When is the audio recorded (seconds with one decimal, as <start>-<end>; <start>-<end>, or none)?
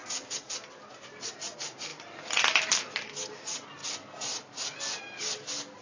0.0-5.8